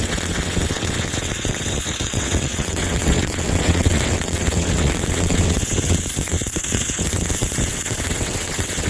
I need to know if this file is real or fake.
fake